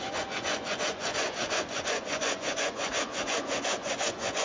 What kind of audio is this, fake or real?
fake